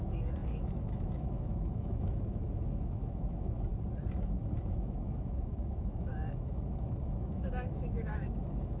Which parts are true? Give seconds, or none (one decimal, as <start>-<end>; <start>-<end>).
3.7-4.2